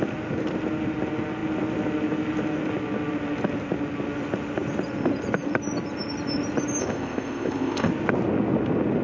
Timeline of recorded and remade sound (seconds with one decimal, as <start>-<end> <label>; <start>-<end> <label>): 0.0-6.8 recorded; 6.8-7.9 remade; 7.9-9.0 recorded